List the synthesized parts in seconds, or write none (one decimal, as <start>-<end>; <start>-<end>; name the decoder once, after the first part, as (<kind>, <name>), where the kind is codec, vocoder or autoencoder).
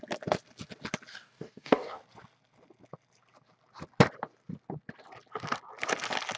1.1-2.0 (codec, DAC)